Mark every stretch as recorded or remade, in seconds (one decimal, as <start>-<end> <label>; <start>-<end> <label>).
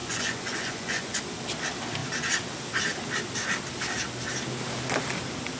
0.0-1.2 remade; 1.2-5.6 recorded